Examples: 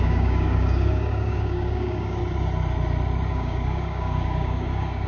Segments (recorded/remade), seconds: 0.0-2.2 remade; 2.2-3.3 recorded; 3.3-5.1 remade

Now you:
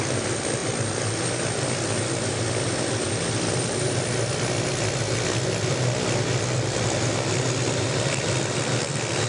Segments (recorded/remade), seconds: 0.0-9.3 recorded

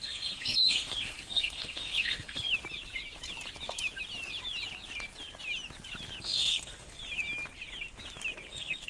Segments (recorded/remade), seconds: 0.0-2.5 remade; 2.5-6.2 recorded; 6.2-7.0 remade; 7.0-8.5 recorded; 8.5-8.9 remade